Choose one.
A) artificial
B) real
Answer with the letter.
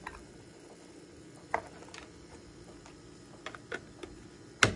B